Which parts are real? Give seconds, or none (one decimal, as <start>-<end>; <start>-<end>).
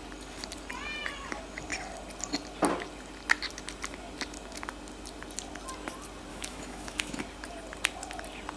0.0-6.3; 7.2-8.6